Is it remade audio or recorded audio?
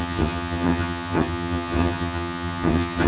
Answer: remade